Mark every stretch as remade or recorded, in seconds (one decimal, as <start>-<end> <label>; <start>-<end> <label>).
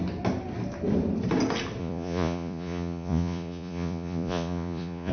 0.0-1.8 recorded; 1.8-5.1 remade